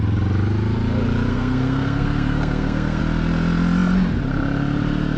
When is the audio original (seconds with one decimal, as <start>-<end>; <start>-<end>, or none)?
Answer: 0.0-1.3; 3.0-5.2